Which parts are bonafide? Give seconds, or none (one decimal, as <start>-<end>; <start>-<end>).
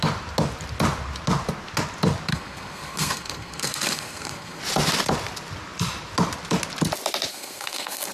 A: 0.0-2.3; 4.6-7.3